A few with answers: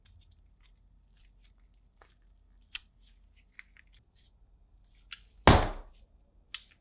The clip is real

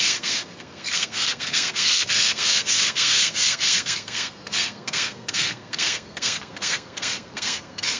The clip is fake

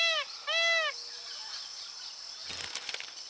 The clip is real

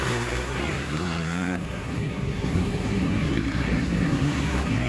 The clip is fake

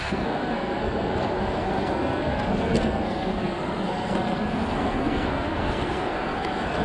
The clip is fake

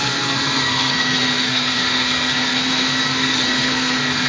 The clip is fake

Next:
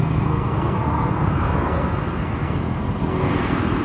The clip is fake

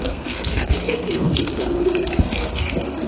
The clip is fake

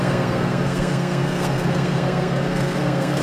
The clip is fake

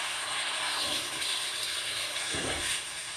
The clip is fake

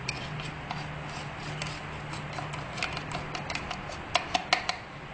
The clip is real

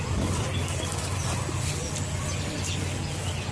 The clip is real